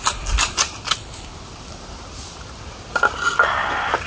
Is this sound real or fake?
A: real